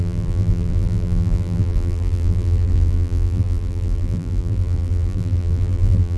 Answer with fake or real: fake